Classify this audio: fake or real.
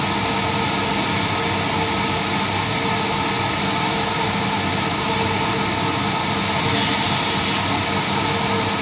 real